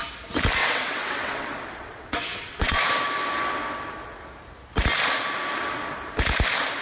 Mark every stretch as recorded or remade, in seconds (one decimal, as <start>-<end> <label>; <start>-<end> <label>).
0.0-0.6 recorded; 0.6-2.8 remade; 2.8-6.8 recorded